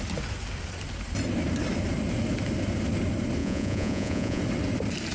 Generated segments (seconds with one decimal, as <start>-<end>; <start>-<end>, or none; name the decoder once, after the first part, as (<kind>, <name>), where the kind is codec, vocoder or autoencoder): 3.4-4.4 (vocoder, Vocos)